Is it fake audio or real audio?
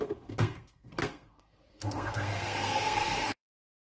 fake